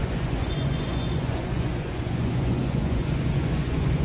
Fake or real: fake